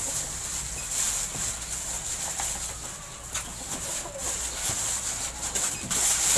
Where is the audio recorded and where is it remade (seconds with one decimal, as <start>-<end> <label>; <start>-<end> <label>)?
0.0-6.4 recorded